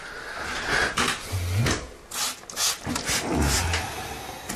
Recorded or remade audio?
recorded